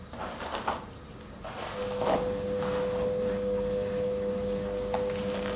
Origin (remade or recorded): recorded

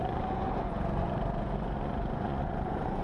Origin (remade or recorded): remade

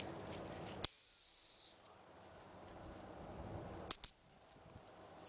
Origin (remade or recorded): recorded